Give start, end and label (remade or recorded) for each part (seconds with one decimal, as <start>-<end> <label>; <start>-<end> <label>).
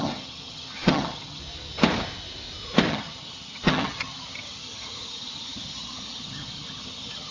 0.0-1.4 remade; 1.4-2.9 recorded; 2.9-7.3 remade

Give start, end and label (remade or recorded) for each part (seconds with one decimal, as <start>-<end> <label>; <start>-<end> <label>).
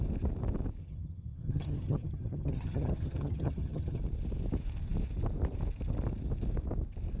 0.0-0.8 recorded; 0.8-4.0 remade; 4.0-7.2 recorded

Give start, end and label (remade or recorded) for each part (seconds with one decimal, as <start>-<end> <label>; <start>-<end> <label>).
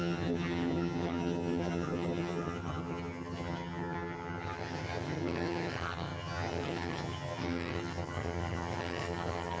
0.0-9.6 remade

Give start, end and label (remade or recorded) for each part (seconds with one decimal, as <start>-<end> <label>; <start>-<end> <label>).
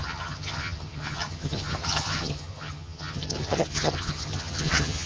0.0-5.1 remade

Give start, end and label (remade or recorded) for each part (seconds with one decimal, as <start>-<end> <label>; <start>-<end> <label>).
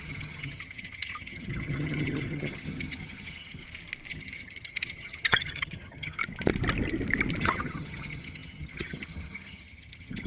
0.0-3.6 remade; 3.6-4.1 recorded; 4.1-6.2 remade; 6.2-7.4 recorded; 7.4-10.3 remade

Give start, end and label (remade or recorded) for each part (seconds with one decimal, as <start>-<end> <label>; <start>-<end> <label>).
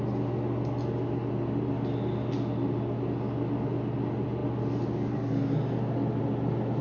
0.0-6.8 recorded